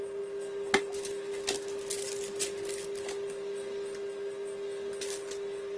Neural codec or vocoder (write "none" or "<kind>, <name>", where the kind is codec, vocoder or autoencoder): none